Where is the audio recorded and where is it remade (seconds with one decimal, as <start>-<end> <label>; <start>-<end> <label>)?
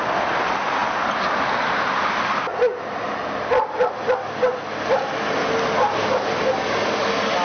0.0-7.4 recorded